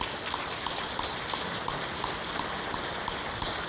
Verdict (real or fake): real